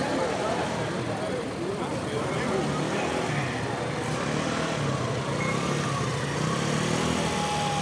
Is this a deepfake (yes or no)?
no